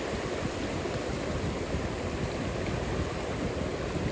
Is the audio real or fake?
real